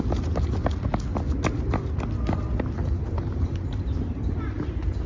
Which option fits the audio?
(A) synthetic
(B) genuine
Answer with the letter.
B